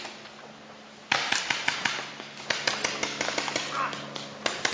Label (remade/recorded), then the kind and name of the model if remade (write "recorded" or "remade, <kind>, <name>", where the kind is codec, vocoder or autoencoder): recorded